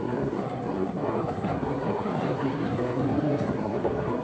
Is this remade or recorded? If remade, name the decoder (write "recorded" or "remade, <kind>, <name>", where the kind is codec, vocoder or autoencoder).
remade, codec, SNAC